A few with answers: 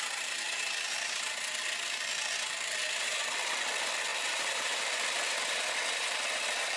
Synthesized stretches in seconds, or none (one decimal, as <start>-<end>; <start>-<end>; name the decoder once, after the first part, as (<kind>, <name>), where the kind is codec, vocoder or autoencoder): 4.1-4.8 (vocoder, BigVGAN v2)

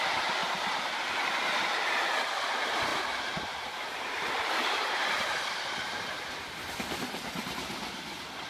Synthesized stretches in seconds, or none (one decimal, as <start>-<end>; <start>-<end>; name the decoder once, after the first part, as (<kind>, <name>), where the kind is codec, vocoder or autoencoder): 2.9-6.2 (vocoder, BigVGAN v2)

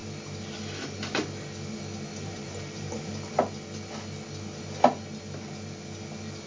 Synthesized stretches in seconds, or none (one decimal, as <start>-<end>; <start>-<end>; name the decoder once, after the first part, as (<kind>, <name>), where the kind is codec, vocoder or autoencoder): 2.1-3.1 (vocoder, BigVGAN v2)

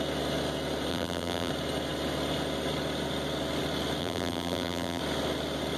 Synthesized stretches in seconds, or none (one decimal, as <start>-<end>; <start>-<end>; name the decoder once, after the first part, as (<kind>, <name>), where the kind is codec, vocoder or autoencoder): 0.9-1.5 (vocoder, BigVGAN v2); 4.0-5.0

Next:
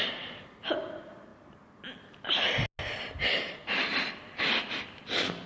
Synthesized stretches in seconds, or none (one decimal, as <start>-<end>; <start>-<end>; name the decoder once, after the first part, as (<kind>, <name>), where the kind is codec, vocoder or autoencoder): none